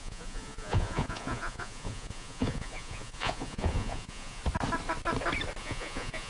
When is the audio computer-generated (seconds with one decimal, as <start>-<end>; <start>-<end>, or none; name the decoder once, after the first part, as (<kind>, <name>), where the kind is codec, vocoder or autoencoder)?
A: 0.0-4.4 (vocoder, Vocos); 5.6-6.3